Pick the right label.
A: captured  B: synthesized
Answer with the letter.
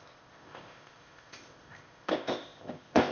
B